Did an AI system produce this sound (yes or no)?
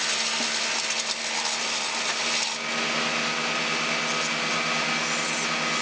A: no